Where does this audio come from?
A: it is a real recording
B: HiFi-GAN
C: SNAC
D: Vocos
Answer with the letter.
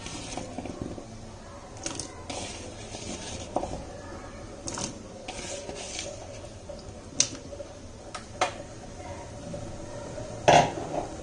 A